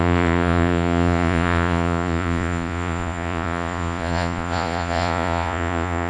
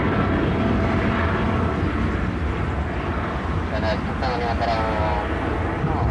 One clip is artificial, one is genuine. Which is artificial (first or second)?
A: first